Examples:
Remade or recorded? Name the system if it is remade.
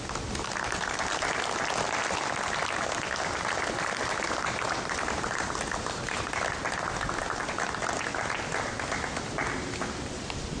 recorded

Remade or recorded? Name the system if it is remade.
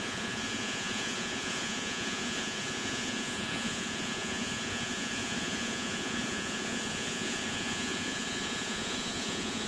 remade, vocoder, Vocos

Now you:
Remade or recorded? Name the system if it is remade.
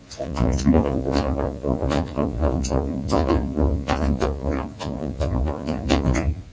remade, vocoder, Vocos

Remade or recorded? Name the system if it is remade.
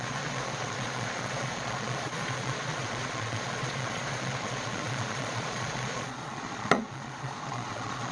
remade, vocoder, Vocos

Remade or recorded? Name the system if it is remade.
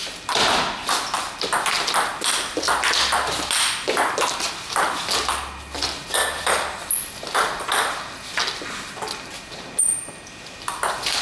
recorded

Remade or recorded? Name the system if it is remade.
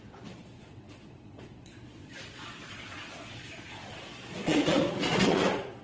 remade, vocoder, Vocos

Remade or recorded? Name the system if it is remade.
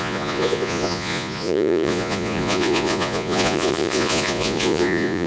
remade, vocoder, Vocos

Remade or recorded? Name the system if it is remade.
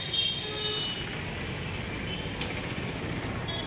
recorded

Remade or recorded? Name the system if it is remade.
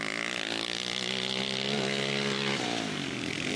recorded